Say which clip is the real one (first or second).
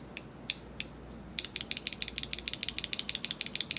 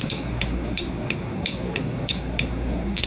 first